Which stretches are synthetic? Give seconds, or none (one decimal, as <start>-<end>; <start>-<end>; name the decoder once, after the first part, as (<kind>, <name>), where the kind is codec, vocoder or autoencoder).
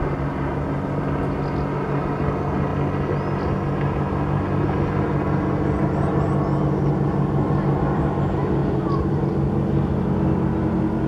8.6-9.3 (vocoder, BigVGAN v2)